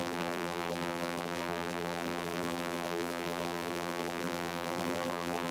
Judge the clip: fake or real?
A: fake